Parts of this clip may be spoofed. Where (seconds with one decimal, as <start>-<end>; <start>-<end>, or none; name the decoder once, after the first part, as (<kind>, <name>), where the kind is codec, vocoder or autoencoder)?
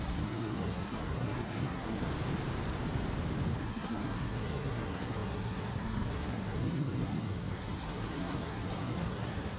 0.0-2.1 (codec, SNAC); 3.6-9.6